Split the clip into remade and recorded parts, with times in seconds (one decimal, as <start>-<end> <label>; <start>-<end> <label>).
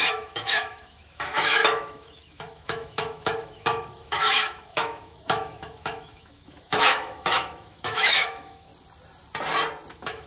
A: 0.0-8.7 remade; 8.7-9.9 recorded; 9.9-10.3 remade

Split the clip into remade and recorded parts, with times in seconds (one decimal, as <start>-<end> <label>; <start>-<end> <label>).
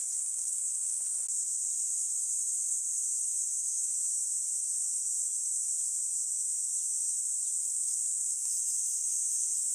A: 0.0-1.0 remade; 1.0-7.6 recorded; 7.6-8.5 remade; 8.5-9.7 recorded